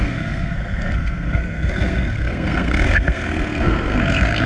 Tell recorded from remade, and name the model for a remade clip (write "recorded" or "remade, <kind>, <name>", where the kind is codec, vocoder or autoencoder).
remade, codec, SNAC